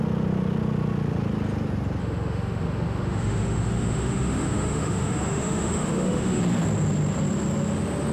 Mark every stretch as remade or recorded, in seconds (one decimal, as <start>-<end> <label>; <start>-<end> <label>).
0.0-2.0 recorded; 2.0-6.4 remade; 6.4-8.1 recorded